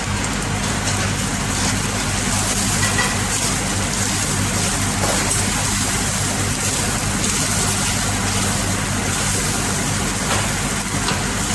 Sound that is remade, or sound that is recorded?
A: recorded